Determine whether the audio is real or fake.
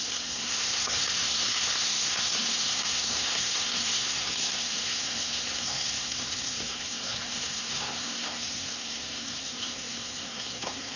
fake